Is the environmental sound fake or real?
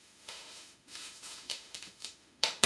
fake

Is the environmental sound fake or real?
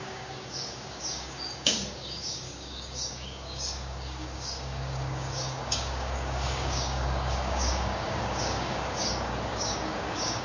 fake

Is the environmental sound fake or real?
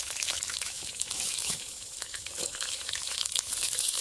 fake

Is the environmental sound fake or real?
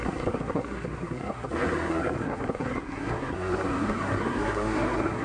fake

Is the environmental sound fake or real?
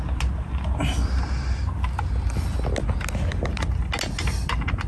real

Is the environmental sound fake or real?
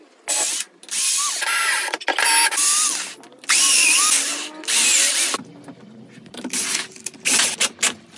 real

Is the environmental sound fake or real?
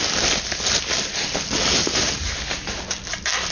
real